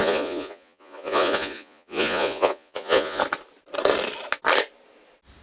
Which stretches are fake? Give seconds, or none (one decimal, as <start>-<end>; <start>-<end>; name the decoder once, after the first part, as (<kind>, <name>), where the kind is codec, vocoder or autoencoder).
0.0-3.2 (vocoder, Vocos)